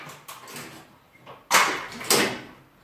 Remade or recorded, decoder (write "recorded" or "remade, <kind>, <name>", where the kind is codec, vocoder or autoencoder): recorded